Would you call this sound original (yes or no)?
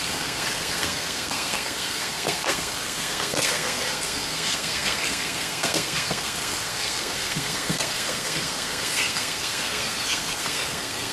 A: no